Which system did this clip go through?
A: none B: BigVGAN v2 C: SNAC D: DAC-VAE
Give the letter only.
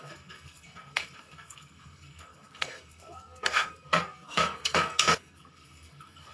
C